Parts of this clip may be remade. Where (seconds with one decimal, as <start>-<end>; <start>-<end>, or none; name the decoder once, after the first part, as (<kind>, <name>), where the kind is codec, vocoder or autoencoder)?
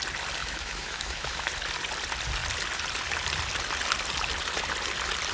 0.4-1.5 (autoencoder, DAC-VAE)